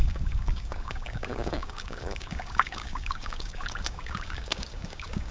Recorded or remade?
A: remade